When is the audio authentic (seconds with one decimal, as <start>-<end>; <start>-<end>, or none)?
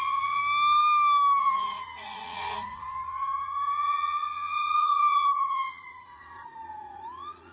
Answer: 0.4-1.4